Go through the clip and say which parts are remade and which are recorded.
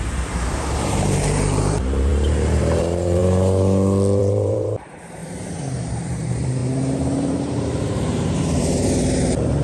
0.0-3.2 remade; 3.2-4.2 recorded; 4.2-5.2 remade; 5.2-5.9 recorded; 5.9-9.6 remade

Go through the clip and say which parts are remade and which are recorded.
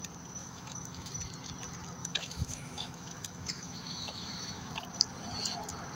0.0-0.4 recorded; 0.4-1.1 remade; 1.1-2.0 recorded; 2.0-4.7 remade; 4.7-5.9 recorded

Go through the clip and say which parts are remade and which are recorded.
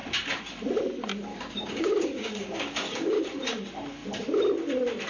0.0-1.3 recorded; 1.3-3.2 remade; 3.2-5.1 recorded